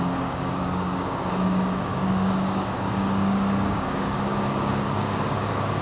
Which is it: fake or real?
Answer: fake